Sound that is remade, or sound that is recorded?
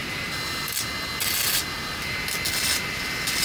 recorded